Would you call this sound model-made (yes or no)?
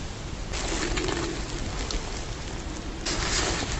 no